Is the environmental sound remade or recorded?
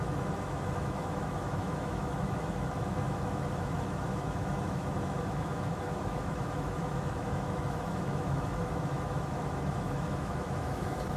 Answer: remade